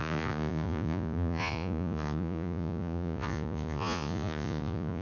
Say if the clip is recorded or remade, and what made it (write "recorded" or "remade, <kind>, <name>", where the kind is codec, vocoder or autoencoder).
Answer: remade, vocoder, Vocos